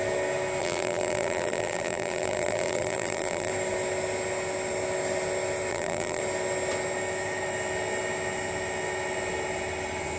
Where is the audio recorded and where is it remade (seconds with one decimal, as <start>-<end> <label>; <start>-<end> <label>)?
0.0-0.6 recorded; 0.6-3.5 remade; 3.5-5.7 recorded; 5.7-6.2 remade; 6.2-10.2 recorded